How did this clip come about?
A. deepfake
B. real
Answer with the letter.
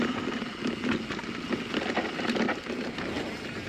B